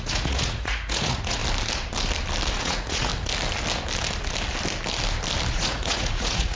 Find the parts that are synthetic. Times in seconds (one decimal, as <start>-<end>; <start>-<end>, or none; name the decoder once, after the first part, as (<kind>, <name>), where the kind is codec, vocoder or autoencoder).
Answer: 0.0-1.4 (vocoder, Vocos); 2.6-3.1; 5.5-6.6